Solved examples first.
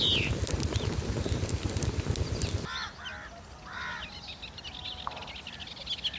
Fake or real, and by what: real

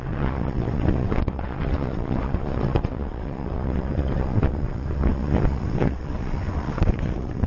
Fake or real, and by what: fake, vocoder, WaveNeXt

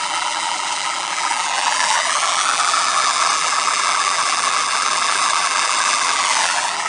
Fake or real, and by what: fake, vocoder, BigVGAN v2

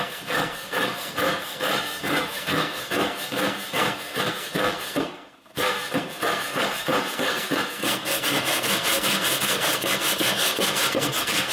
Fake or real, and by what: fake, codec, SNAC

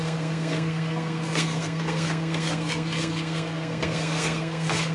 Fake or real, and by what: fake, codec, SNAC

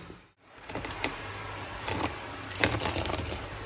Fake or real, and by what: fake, vocoder, BigVGAN v2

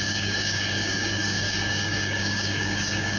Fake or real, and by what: fake, codec, DAC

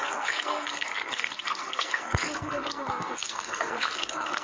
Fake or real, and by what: fake, codec, SNAC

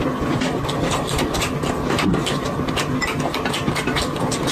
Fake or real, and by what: real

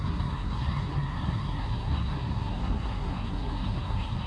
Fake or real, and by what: fake, codec, SNAC